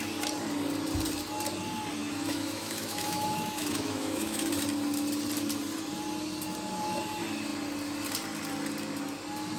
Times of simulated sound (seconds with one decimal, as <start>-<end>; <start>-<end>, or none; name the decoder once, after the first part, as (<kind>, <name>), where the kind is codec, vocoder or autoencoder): 2.0-4.5 (autoencoder, DAC-VAE)